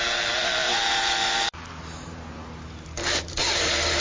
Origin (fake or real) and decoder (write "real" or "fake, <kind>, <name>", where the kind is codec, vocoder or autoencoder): fake, vocoder, BigVGAN v2